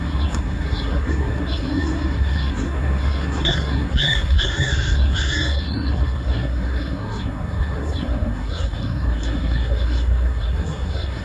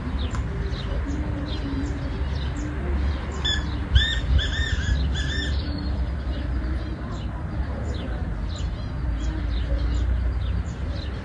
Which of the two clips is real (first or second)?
second